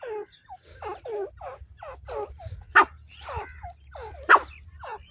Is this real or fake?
real